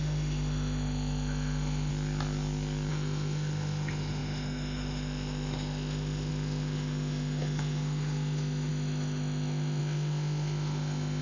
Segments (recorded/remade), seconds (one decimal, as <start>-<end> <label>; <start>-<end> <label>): 0.0-1.9 remade; 1.9-2.9 recorded; 2.9-11.2 remade